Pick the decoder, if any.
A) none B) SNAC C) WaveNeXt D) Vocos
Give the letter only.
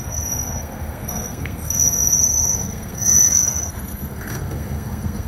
B